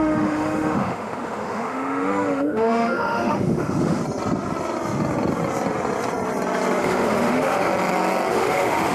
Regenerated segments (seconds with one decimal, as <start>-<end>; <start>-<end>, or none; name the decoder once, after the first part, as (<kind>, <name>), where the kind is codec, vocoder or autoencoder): 0.0-4.0 (autoencoder, DAC-VAE); 6.8-7.7; 8.3-8.9